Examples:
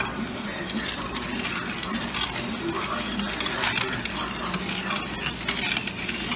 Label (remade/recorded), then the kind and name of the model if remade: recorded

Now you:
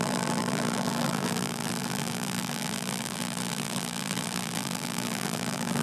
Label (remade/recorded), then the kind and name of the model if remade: remade, vocoder, BigVGAN v2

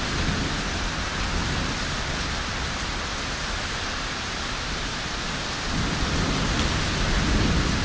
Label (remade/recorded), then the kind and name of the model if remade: recorded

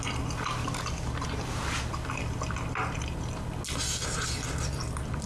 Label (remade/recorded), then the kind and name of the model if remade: recorded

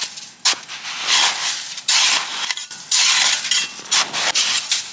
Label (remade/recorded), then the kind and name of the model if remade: recorded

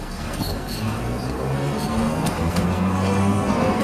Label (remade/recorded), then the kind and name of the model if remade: remade, codec, SNAC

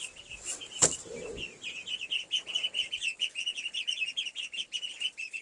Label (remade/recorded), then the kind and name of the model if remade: recorded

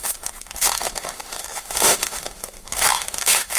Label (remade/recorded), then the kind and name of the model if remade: remade, autoencoder, DAC-VAE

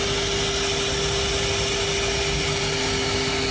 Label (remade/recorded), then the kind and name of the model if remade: recorded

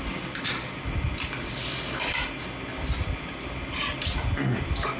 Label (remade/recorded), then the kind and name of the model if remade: recorded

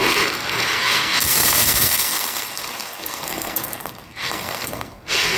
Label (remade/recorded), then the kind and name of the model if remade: remade, codec, SNAC